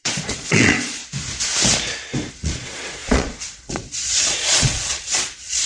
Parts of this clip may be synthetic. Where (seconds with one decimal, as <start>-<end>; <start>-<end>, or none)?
0.0-1.0; 2.3-5.7